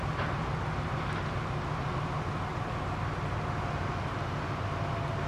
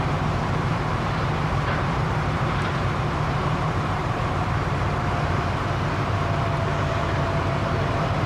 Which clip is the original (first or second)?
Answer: first